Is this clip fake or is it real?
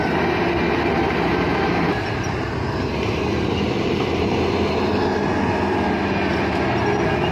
real